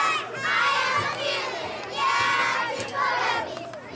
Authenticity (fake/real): real